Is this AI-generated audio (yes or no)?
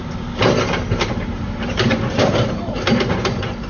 yes